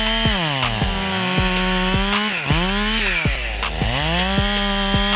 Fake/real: real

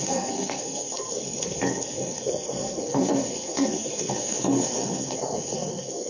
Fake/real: fake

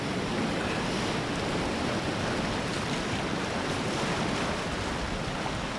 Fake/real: real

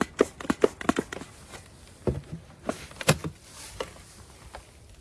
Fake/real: real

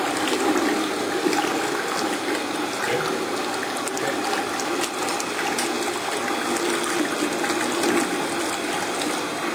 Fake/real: real